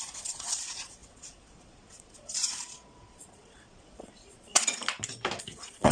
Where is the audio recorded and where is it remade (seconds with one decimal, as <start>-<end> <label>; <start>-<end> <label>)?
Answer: 0.0-4.8 remade; 4.8-5.4 recorded; 5.4-5.9 remade